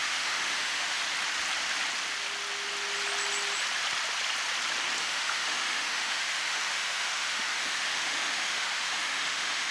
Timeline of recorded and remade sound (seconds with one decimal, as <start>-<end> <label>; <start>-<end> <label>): 0.0-1.0 remade; 1.0-5.0 recorded; 5.0-9.7 remade